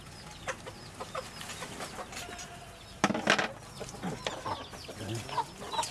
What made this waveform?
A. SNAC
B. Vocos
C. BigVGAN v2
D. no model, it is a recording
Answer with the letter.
D